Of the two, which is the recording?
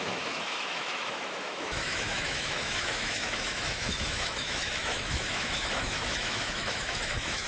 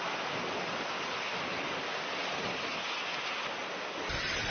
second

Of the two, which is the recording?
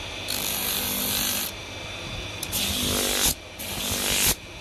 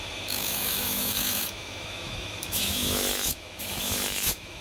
first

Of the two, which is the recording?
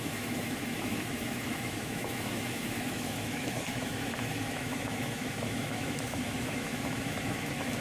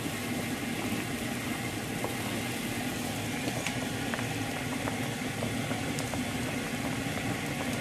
second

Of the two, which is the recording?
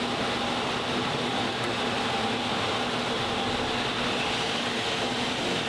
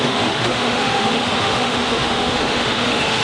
first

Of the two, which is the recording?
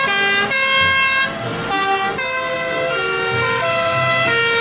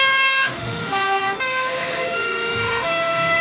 first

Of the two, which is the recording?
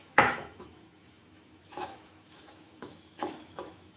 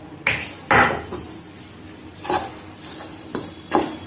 second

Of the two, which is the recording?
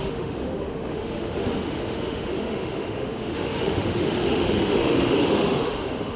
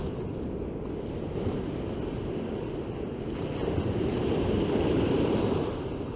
second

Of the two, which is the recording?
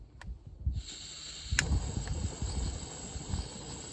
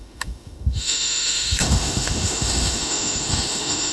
first